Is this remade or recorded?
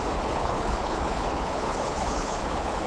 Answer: remade